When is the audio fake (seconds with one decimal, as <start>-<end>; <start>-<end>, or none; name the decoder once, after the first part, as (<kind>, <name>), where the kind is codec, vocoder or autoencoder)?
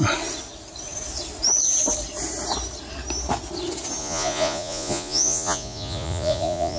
4.0-6.8 (vocoder, Vocos)